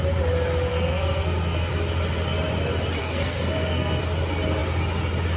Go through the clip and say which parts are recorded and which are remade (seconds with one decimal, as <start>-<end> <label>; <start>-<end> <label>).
0.0-0.7 recorded; 0.7-1.7 remade; 1.7-3.0 recorded; 3.0-4.0 remade; 4.0-5.4 recorded